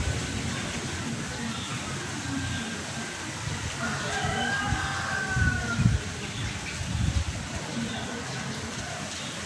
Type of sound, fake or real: real